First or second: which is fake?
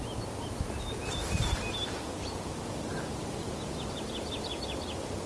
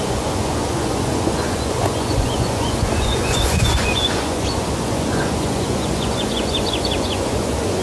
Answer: second